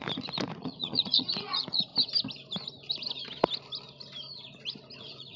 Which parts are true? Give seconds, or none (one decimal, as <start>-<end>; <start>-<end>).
1.9-5.0